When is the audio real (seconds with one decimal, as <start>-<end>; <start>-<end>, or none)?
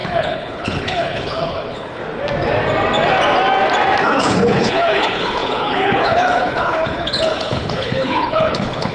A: 2.0-4.2